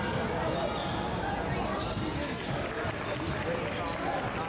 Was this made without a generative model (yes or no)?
yes